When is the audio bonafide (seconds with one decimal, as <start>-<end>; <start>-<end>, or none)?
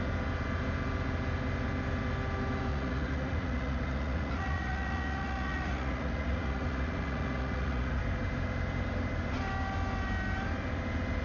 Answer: 0.0-2.7; 8.0-11.2